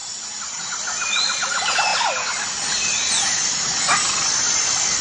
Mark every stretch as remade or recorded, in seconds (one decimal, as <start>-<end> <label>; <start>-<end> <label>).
0.0-0.6 remade; 0.6-1.9 recorded; 1.9-2.7 remade; 2.7-5.0 recorded